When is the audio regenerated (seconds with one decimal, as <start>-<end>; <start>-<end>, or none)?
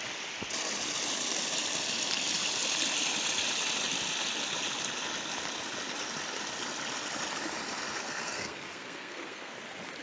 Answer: 8.0-9.6